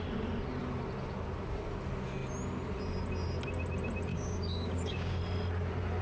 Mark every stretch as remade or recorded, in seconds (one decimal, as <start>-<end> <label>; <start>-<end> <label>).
0.0-4.1 recorded; 4.1-5.2 remade; 5.2-6.0 recorded